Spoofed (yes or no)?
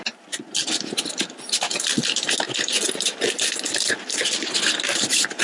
no